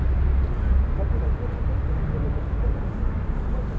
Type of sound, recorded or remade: recorded